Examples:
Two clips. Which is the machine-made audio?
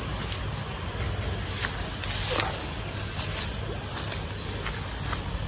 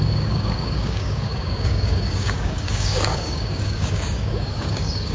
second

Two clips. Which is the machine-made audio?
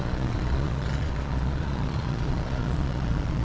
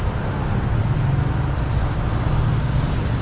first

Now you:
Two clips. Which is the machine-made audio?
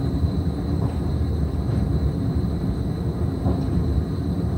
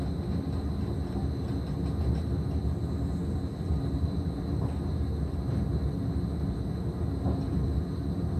first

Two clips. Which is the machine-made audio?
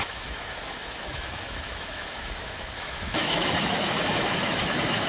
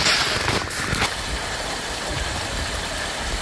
first